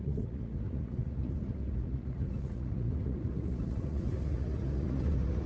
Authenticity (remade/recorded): remade